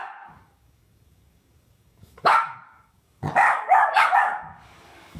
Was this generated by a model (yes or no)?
yes